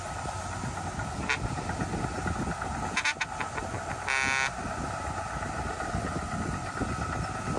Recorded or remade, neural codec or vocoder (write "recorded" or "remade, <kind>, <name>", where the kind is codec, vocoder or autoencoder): recorded